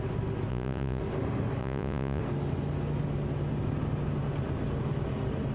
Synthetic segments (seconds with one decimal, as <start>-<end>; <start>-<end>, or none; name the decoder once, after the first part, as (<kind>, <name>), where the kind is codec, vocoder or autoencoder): 0.5-1.0 (vocoder, Vocos); 1.6-2.2